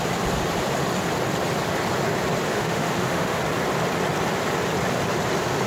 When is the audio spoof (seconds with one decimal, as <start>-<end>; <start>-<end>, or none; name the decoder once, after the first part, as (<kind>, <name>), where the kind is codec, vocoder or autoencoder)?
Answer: 2.5-3.4 (autoencoder, DAC-VAE)